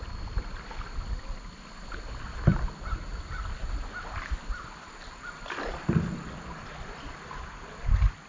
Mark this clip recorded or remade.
recorded